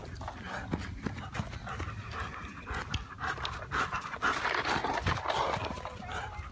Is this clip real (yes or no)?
yes